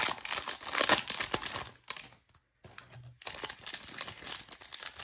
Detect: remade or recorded recorded